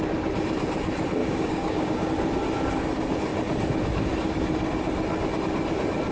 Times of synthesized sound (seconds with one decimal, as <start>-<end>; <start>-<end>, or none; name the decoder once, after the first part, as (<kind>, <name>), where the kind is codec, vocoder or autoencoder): 1.2-2.1 (codec, DAC)